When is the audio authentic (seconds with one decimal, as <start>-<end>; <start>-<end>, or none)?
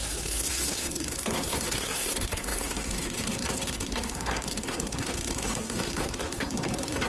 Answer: none